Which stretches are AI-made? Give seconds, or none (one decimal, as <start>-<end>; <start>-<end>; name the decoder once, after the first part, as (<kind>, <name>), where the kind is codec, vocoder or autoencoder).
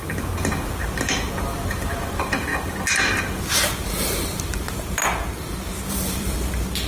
0.0-2.5 (vocoder, BigVGAN v2); 3.5-6.9